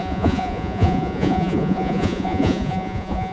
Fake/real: fake